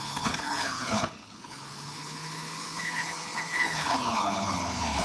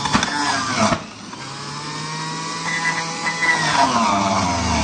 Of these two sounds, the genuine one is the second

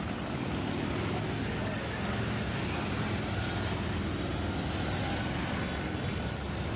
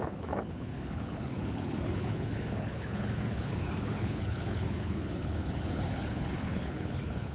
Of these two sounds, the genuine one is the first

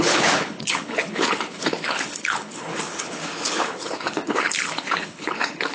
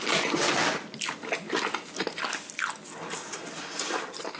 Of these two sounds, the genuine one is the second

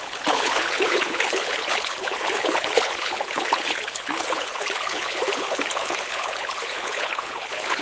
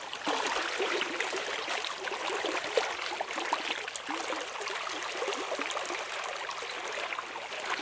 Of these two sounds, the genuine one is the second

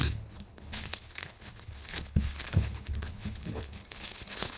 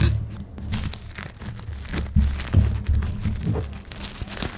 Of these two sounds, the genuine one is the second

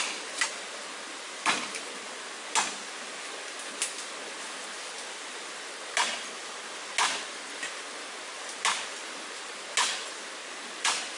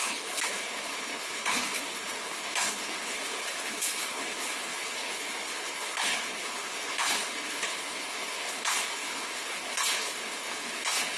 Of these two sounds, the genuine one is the first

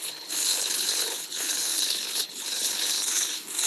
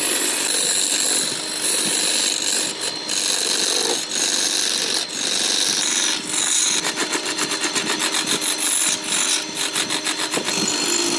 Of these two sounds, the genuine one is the second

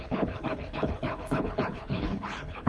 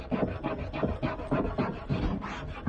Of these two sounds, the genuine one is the second